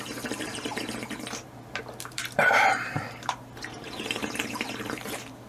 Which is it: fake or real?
fake